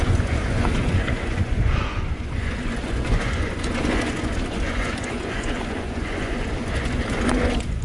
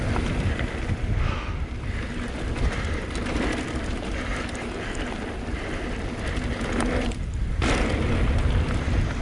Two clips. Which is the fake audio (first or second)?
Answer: first